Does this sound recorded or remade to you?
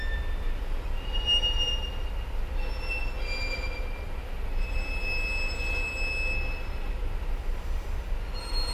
recorded